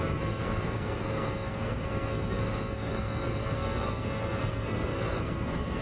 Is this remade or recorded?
remade